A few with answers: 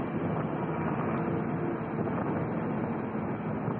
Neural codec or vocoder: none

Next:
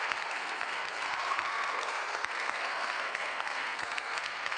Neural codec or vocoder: codec, SNAC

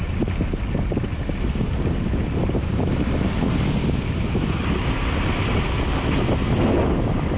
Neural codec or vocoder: none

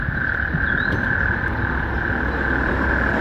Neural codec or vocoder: none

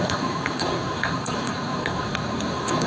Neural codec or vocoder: codec, SNAC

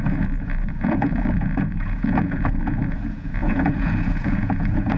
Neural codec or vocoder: vocoder, Vocos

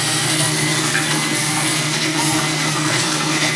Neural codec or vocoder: codec, SNAC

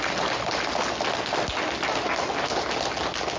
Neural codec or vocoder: none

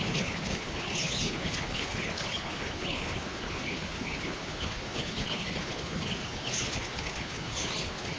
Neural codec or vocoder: codec, HILCodec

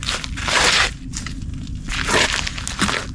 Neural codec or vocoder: none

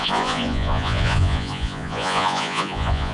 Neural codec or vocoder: vocoder, Vocos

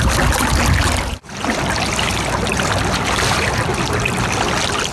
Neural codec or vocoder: none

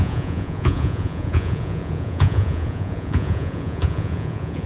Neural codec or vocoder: vocoder, Vocos